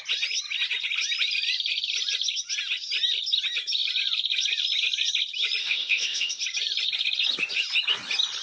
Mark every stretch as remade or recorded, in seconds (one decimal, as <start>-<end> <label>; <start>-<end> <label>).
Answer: 0.0-5.6 recorded; 5.6-6.4 remade; 6.4-8.4 recorded